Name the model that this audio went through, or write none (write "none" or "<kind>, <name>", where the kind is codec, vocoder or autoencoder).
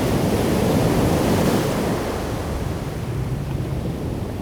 vocoder, BigVGAN v2